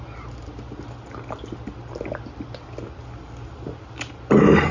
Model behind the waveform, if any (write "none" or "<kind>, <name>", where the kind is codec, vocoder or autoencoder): none